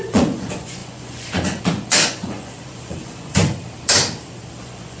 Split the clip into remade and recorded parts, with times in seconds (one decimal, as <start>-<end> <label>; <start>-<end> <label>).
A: 0.0-3.4 remade; 3.4-4.6 recorded; 4.6-5.0 remade